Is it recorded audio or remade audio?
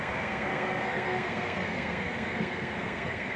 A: remade